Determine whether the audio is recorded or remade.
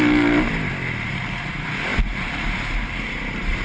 recorded